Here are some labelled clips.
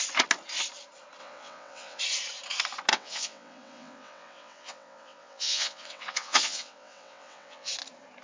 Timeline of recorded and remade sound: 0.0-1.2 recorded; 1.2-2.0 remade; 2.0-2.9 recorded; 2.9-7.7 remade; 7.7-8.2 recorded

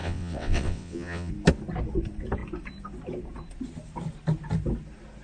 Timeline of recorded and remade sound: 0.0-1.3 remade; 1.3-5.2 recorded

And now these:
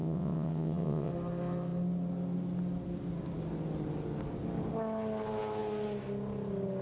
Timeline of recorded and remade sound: 0.0-1.1 remade; 1.1-6.8 recorded

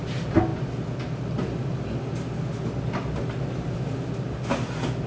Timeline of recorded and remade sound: 0.0-5.1 recorded